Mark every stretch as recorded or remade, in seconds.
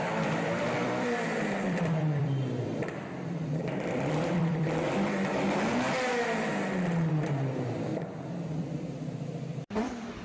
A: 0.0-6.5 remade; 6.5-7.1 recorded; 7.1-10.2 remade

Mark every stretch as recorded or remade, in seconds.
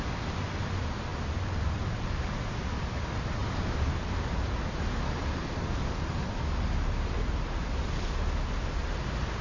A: 0.0-9.4 recorded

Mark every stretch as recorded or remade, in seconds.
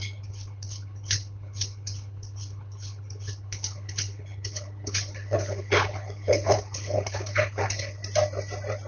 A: 0.0-8.0 remade; 8.0-8.9 recorded